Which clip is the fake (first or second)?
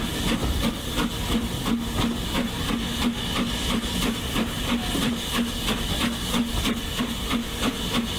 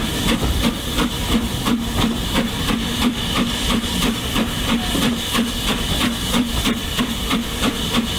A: second